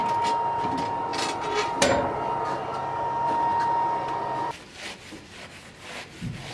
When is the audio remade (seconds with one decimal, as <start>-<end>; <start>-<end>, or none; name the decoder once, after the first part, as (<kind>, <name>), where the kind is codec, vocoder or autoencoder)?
1.1-5.0 (vocoder, BigVGAN v2)